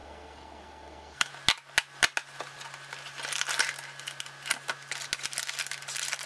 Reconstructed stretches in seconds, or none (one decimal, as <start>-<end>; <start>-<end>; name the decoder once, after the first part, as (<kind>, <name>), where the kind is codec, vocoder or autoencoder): 0.0-1.3 (codec, SNAC)

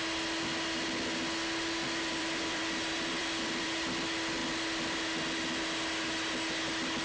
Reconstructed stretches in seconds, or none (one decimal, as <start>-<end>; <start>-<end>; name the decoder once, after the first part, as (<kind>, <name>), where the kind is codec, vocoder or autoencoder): 2.1-3.9 (vocoder, BigVGAN v2); 4.4-5.2

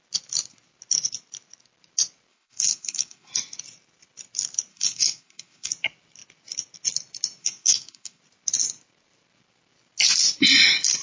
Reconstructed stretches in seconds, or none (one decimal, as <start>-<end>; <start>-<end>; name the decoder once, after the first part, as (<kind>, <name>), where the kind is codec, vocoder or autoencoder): 2.3-3.3 (autoencoder, DAC-VAE); 4.7-5.7; 7.4-8.2

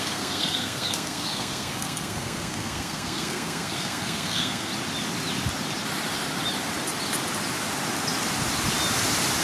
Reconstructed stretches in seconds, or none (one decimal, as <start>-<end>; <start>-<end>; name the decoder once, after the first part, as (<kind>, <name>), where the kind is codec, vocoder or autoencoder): 0.0-4.7 (codec, SNAC)

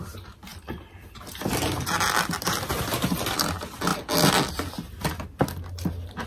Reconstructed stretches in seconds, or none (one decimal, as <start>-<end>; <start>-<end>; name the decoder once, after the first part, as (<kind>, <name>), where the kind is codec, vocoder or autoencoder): none

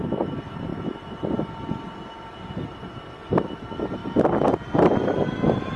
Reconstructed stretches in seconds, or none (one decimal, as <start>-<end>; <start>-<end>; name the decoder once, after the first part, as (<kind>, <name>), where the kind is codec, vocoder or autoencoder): none

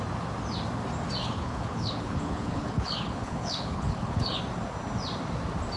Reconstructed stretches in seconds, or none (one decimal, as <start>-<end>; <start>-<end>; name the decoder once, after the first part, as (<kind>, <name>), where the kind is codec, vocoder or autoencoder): 1.2-4.4 (codec, HILCodec)

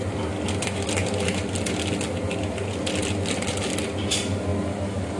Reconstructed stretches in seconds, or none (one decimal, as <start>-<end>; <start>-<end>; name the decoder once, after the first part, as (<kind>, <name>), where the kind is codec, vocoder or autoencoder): none